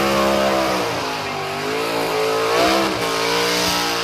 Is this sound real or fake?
real